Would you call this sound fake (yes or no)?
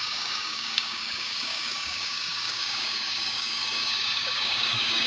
yes